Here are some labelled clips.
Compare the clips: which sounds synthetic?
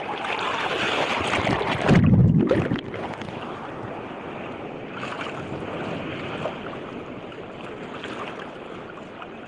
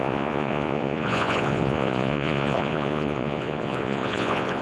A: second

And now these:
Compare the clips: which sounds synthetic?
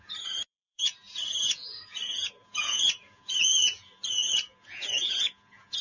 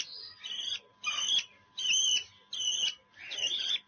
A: first